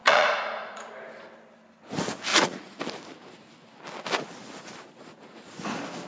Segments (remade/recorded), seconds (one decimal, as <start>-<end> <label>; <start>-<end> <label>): 0.0-0.8 remade; 0.8-2.3 recorded; 2.3-2.8 remade; 2.8-6.1 recorded